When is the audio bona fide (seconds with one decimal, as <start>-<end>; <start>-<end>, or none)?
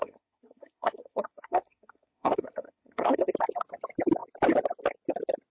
3.3-5.5